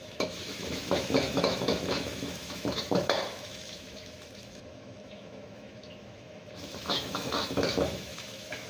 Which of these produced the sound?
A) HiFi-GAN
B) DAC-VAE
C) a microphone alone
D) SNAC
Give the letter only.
B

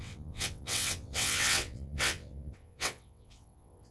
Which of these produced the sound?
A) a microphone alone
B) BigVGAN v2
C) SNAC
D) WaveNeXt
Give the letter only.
D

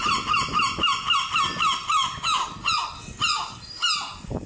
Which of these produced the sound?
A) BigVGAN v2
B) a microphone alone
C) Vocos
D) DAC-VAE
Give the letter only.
B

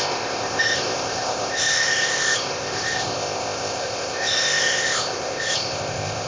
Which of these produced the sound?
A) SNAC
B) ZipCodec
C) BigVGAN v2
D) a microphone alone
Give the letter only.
B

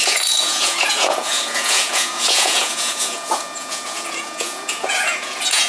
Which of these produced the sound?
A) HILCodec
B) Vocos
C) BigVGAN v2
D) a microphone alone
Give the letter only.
B